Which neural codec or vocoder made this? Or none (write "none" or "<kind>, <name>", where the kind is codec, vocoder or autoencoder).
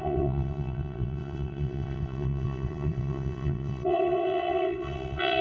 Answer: vocoder, WaveNeXt